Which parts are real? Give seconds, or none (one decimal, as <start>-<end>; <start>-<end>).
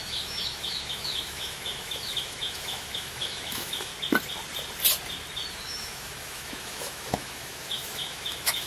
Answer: 3.9-5.5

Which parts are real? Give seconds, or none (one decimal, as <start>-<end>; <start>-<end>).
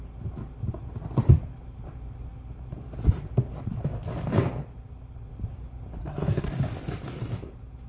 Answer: 0.0-6.0; 6.5-7.9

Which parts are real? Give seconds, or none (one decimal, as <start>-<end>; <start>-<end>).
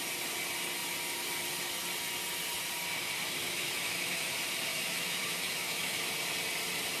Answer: 0.0-3.4; 4.3-4.7; 6.1-7.0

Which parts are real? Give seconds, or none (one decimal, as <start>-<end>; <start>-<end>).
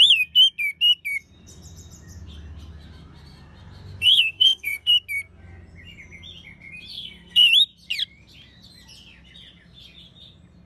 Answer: 0.0-4.0; 4.9-6.9; 7.5-10.7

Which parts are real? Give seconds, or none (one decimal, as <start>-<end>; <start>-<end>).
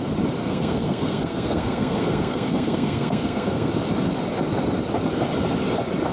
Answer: 0.0-0.4; 3.7-6.1